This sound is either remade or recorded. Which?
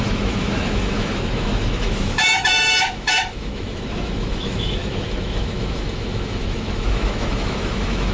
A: remade